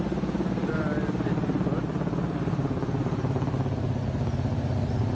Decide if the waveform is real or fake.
real